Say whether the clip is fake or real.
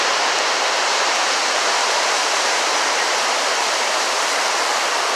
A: fake